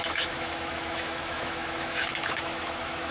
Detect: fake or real fake